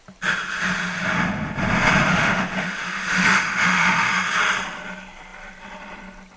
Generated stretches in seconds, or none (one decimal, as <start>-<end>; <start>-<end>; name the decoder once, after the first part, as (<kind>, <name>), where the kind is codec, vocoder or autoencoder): 2.1-4.3 (autoencoder, DAC-VAE)